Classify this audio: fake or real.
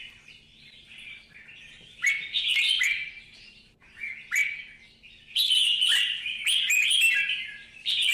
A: real